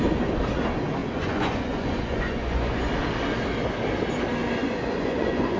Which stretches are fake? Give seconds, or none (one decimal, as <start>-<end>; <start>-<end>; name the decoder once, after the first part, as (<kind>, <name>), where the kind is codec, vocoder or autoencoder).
1.0-2.9 (vocoder, Vocos); 4.6-5.6